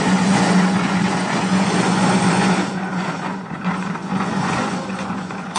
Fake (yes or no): yes